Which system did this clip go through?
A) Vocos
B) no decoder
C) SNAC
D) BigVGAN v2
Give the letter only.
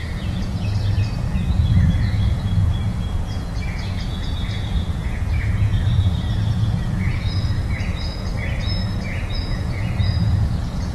A